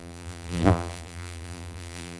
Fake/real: fake